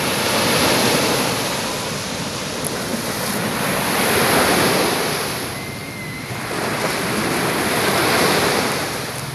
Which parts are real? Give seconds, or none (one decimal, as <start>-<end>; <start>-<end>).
0.0-9.3

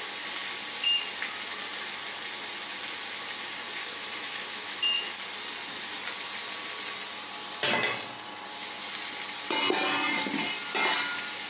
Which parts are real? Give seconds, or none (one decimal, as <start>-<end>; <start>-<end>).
0.0-3.8; 5.1-11.5

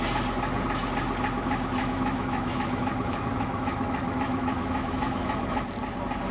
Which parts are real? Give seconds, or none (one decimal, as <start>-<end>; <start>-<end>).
0.0-1.8; 5.6-6.3

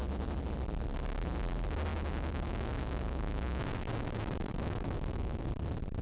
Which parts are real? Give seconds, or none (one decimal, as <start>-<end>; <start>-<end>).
0.0-1.9; 5.5-6.0

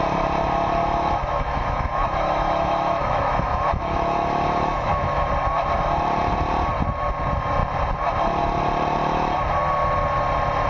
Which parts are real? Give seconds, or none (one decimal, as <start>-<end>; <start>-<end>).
0.0-0.8; 5.3-10.7

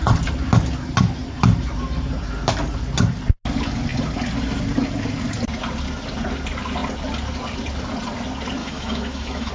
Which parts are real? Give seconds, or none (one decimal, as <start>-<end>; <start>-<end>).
0.0-8.6

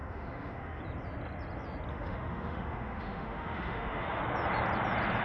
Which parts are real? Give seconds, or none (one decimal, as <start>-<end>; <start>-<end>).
0.8-1.9; 4.2-5.2

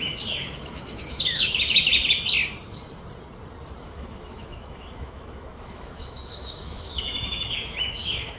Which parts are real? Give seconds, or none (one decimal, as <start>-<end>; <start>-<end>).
1.9-3.8